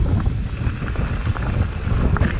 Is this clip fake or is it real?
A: real